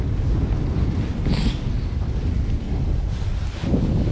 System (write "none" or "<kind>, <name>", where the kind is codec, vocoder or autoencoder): none